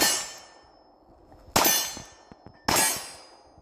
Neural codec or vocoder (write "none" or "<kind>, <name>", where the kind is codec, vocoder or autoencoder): none